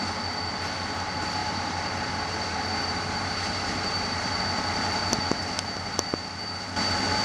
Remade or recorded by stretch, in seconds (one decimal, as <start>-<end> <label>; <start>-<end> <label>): 0.0-1.4 recorded; 1.4-4.3 remade; 4.3-7.2 recorded